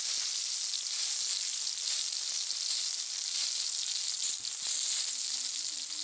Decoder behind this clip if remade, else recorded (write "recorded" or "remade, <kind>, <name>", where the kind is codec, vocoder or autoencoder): recorded